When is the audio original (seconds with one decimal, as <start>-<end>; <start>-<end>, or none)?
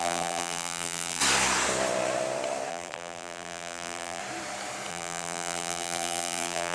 1.2-2.7; 4.2-4.9